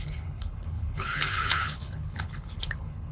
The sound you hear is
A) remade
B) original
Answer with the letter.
A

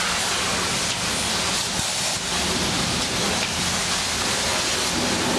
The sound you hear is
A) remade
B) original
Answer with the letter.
B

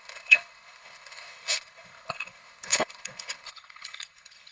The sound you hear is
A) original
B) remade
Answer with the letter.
B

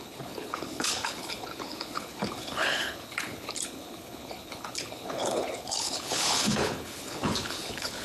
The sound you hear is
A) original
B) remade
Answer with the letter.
B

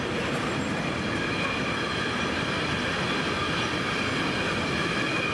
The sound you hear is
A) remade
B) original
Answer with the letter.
B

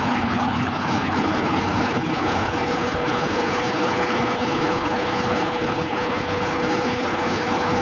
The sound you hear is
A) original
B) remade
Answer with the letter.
B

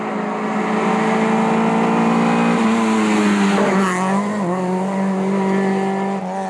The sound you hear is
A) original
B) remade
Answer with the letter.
A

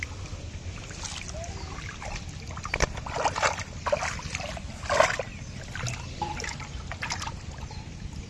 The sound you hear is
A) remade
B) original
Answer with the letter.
B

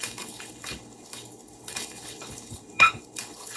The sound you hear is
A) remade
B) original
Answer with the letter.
A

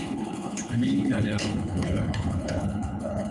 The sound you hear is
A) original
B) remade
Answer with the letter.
B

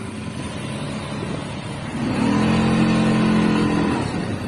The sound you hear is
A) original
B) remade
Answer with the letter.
A